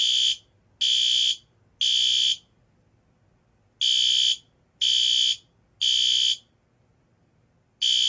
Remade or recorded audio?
recorded